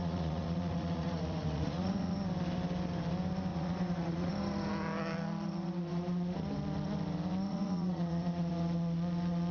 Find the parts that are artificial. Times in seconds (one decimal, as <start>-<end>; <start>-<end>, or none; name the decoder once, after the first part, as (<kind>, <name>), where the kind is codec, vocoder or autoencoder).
0.0-2.1 (vocoder, Vocos); 3.5-4.3; 7.5-8.5